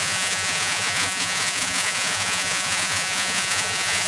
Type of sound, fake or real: fake